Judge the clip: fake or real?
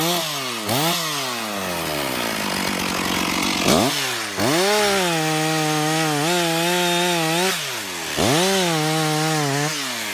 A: real